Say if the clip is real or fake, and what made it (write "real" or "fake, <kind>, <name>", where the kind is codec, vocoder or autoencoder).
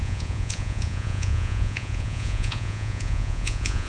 fake, vocoder, Vocos